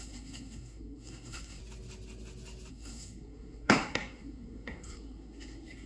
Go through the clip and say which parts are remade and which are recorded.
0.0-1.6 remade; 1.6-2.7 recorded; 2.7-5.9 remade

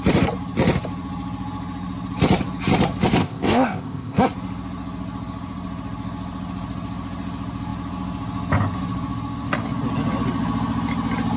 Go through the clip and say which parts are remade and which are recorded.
0.0-3.2 recorded; 3.2-4.2 remade; 4.2-11.4 recorded

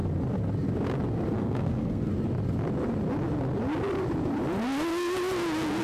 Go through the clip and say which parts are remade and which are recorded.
0.0-1.4 recorded; 1.4-2.1 remade; 2.1-5.8 recorded

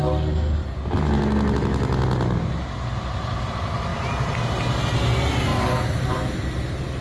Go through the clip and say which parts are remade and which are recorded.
0.0-3.9 recorded; 3.9-4.4 remade; 4.4-5.5 recorded; 5.5-6.3 remade; 6.3-7.0 recorded

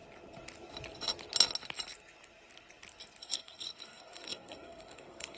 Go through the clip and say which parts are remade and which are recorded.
0.0-3.2 recorded; 3.2-5.4 remade